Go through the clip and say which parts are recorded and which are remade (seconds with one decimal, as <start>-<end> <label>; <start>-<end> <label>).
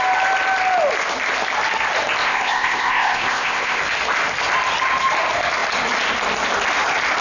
0.0-2.2 recorded; 2.2-3.8 remade; 3.8-7.2 recorded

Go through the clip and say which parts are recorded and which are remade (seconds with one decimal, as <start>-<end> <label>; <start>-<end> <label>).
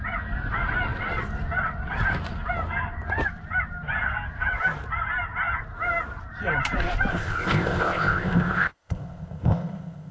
0.0-7.1 recorded; 7.1-10.1 remade